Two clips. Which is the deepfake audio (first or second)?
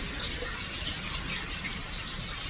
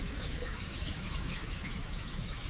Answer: second